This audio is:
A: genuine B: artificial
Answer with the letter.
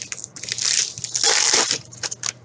A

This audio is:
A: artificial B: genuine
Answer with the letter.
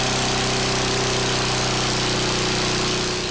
B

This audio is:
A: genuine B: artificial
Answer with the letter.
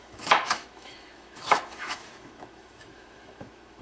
B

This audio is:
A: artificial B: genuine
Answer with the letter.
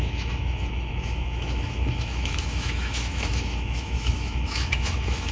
A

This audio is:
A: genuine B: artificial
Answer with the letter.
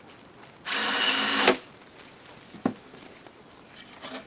A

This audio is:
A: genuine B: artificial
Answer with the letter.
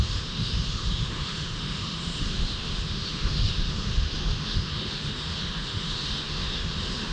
B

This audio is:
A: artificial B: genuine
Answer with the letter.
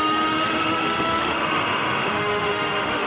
A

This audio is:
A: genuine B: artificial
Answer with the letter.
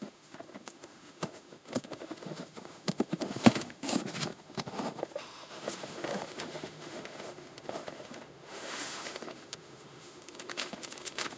B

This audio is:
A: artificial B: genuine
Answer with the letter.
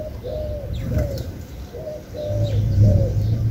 B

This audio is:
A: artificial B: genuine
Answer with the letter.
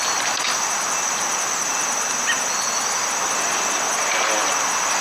B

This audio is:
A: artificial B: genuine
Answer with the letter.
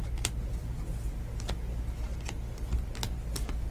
B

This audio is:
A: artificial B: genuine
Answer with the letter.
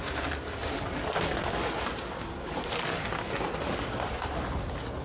B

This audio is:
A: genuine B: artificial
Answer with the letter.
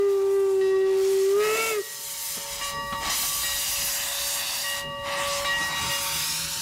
A